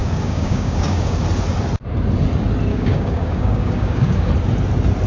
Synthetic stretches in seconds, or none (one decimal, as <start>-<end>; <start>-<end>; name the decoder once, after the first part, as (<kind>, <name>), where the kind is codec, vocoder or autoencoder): 0.0-1.2 (codec, DAC); 2.7-4.3